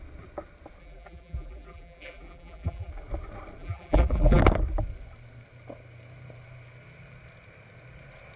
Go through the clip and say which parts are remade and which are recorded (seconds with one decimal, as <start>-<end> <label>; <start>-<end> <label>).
0.0-0.8 recorded; 0.8-2.9 remade; 2.9-3.6 recorded; 3.6-4.4 remade; 4.4-8.4 recorded